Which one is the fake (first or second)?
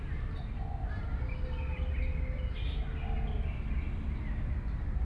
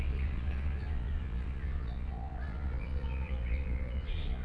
second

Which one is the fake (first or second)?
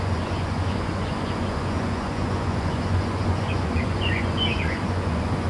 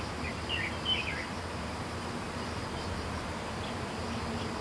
first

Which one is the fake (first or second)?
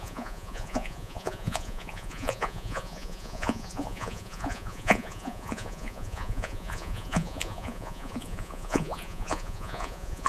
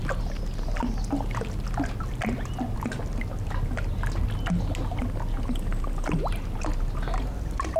first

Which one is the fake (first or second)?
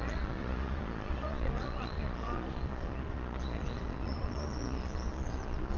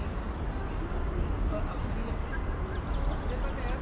first